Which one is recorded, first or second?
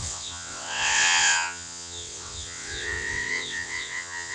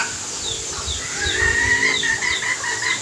second